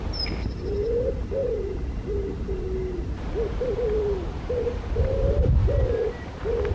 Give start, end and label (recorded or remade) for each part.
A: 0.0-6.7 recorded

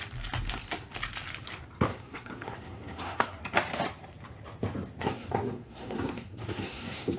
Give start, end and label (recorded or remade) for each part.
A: 0.0-1.9 recorded; 1.9-3.4 remade; 3.4-5.0 recorded; 5.0-7.2 remade